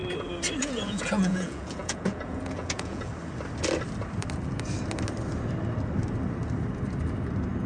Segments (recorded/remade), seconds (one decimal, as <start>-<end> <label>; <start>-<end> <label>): 0.0-0.6 recorded; 0.6-3.1 remade; 3.1-7.7 recorded